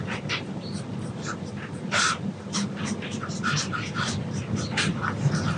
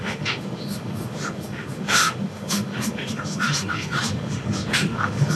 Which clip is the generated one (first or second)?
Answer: second